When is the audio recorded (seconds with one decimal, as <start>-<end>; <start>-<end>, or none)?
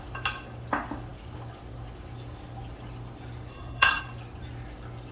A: 0.0-3.5; 4.0-5.1